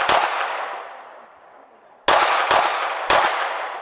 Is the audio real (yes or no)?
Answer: yes